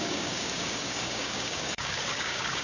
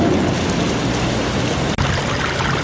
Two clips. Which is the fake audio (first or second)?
first